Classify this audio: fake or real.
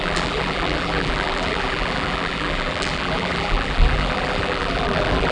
fake